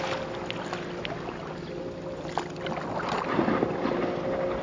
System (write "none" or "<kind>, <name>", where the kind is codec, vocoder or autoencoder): none